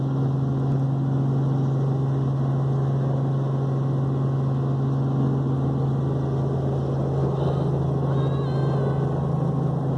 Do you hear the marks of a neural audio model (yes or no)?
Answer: no